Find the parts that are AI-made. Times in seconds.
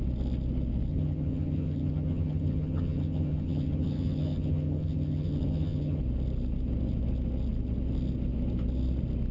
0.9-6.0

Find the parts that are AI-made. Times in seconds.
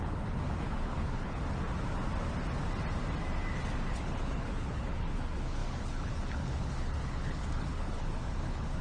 0.0-1.4; 3.9-8.8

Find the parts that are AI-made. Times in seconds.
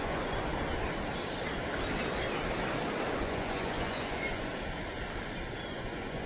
0.0-0.5; 3.2-4.5; 5.7-6.3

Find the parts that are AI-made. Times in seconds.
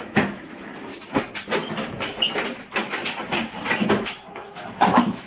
0.0-0.7; 3.9-5.3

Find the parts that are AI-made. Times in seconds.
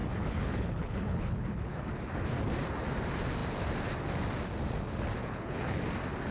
0.0-1.9; 5.2-5.8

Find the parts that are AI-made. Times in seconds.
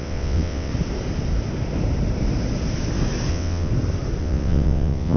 0.0-0.7; 3.3-3.7; 4.2-5.2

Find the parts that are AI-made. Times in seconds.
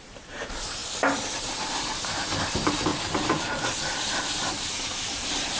0.0-0.8; 1.4-2.9; 3.4-5.6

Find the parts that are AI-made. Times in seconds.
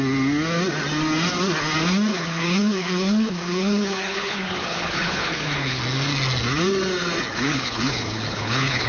2.1-5.8; 7.3-8.9